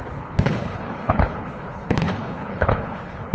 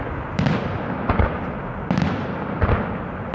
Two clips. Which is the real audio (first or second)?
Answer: second